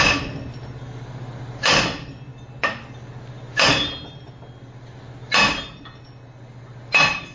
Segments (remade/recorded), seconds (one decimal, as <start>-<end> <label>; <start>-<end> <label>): 0.0-7.3 recorded